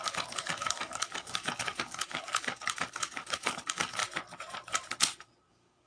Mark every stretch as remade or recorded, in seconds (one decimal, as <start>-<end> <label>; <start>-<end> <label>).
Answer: 0.0-4.0 remade; 4.0-5.5 recorded; 5.5-5.9 remade